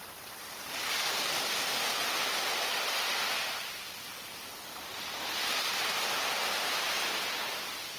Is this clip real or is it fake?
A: real